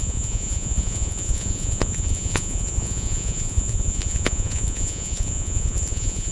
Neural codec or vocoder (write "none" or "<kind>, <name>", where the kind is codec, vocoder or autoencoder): vocoder, Vocos